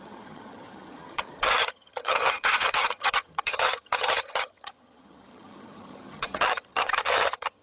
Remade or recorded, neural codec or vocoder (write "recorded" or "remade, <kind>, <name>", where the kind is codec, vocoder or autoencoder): remade, vocoder, HiFi-GAN